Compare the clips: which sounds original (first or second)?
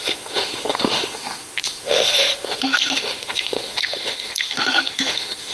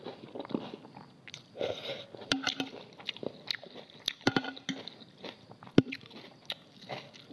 second